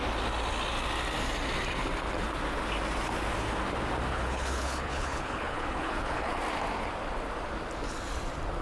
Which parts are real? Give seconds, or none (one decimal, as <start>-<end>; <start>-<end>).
0.0-4.1; 6.4-8.6